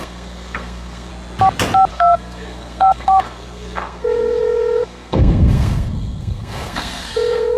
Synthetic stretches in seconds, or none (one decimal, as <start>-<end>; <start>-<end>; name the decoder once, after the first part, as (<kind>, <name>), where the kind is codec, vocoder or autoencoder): 0.0-1.1 (codec, SNAC); 1.9-7.6